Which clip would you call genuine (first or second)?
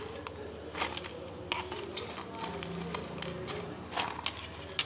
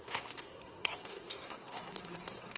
first